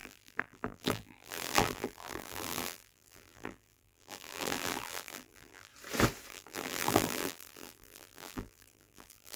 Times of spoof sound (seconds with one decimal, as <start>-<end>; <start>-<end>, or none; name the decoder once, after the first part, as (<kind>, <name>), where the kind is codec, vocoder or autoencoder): 0.0-5.7 (vocoder, BigVGAN v2); 6.3-9.4